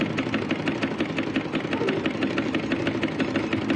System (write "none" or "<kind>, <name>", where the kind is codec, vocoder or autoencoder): none